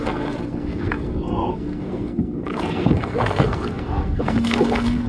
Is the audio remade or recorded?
remade